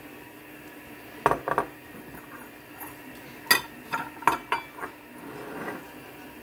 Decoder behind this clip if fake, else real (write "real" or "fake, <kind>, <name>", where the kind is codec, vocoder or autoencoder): real